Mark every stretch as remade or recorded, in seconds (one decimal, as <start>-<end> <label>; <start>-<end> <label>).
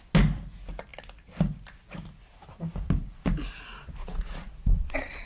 0.0-4.0 recorded; 4.0-5.3 remade